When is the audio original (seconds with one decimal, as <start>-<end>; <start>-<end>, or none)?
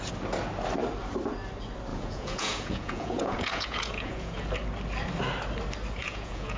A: 0.0-1.9; 4.5-6.0